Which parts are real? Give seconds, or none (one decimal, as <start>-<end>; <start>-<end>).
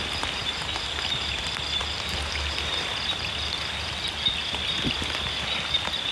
0.0-6.1